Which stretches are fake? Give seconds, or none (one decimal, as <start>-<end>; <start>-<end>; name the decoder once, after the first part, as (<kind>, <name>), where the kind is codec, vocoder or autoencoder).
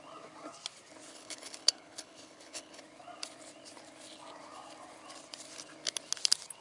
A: 1.1-2.8 (codec, HILCodec)